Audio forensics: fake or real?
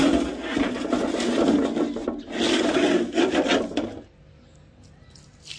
real